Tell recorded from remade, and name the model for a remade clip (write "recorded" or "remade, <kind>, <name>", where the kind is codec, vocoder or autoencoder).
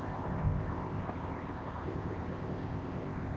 remade, codec, ZipCodec